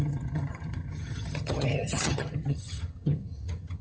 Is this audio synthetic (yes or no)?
yes